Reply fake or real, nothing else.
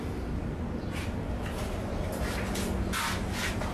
real